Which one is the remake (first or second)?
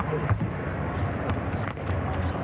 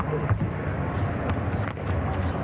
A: first